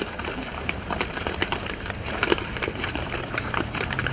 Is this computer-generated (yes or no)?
yes